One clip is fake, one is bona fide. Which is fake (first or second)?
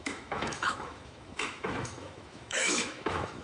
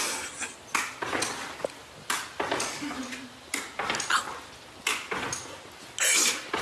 first